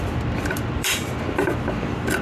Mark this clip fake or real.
fake